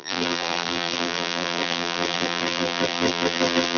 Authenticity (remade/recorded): remade